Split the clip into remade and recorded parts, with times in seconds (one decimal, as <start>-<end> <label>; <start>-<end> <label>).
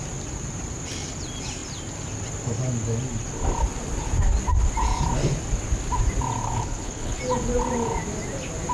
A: 0.0-6.4 recorded; 6.4-7.2 remade; 7.2-8.7 recorded